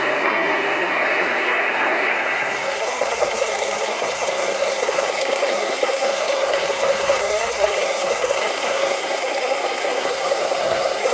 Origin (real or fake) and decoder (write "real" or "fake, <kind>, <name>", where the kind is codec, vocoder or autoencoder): fake, codec, SNAC